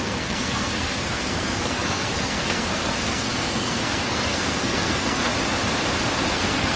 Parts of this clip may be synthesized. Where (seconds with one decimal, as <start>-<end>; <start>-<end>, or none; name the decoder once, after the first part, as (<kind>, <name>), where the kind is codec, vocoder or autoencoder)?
0.0-5.3 (codec, SNAC); 6.3-6.8